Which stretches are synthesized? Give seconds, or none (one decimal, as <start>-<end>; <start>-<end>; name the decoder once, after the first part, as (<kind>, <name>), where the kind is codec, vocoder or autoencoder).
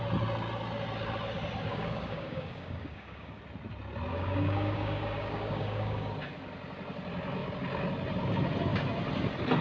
1.7-3.4 (codec, DAC); 4.1-6.1